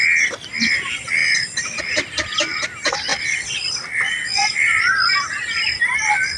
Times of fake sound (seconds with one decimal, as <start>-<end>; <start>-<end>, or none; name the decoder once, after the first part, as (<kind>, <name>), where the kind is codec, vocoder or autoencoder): none